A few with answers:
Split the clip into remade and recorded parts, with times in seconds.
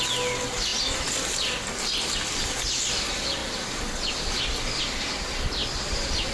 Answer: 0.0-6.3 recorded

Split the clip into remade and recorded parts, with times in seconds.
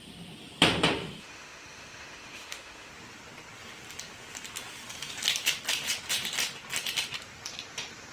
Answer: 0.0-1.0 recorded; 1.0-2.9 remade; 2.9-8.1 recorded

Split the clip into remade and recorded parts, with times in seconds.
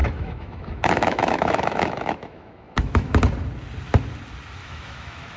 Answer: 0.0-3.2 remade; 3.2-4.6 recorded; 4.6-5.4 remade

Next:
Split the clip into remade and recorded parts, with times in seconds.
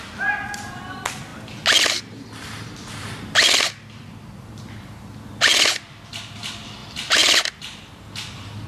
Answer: 0.0-8.7 recorded